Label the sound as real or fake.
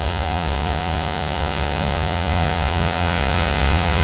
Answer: fake